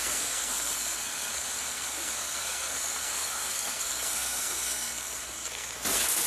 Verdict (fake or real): fake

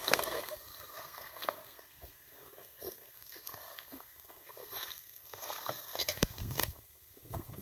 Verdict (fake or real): fake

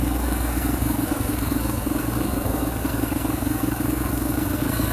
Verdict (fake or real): fake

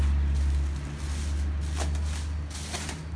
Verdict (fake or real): real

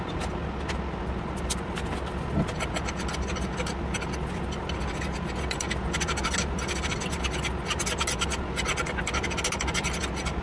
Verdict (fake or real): real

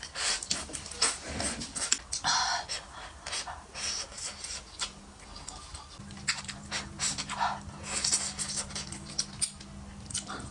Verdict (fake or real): real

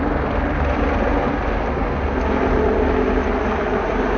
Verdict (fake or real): real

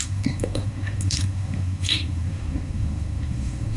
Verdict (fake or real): fake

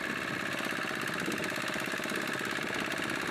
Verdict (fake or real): real